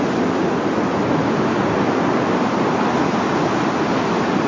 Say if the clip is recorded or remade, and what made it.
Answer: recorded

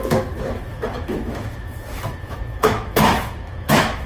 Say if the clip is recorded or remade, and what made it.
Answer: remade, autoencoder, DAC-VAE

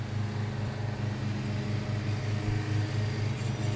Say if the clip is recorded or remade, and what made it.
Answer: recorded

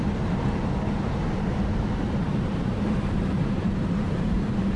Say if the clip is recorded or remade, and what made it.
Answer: remade, vocoder, BigVGAN v2